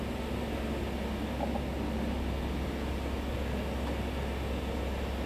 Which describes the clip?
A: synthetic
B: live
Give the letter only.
B